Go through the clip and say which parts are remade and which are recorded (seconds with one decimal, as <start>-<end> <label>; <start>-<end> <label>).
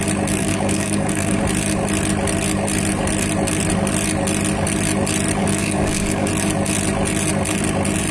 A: 0.0-0.4 recorded; 0.4-1.4 remade; 1.4-5.4 recorded; 5.4-6.3 remade; 6.3-8.1 recorded